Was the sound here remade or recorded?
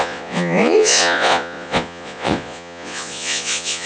remade